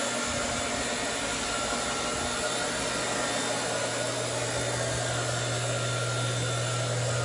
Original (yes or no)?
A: yes